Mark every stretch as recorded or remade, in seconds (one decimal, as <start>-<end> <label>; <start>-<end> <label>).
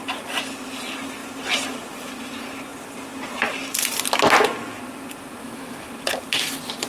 0.0-5.4 recorded; 5.4-5.9 remade; 5.9-6.9 recorded